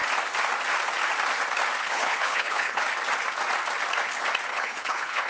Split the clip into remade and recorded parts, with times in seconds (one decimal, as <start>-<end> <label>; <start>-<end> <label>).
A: 0.0-1.8 recorded; 1.8-2.8 remade; 2.8-4.5 recorded; 4.5-5.3 remade